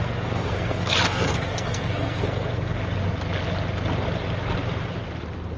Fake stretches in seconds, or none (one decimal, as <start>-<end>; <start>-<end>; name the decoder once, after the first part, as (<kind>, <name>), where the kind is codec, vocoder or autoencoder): 0.0-2.8 (codec, SNAC)